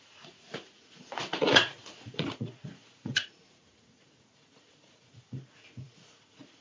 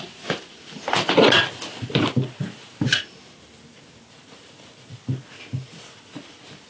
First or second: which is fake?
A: first